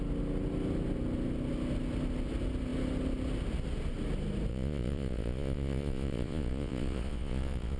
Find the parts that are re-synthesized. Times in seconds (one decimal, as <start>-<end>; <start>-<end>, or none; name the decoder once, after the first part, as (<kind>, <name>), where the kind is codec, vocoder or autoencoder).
4.5-7.8 (vocoder, Vocos)